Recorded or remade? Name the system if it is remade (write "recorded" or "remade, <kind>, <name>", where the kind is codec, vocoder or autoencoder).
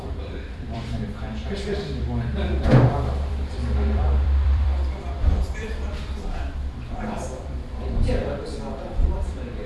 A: remade, vocoder, BigVGAN v2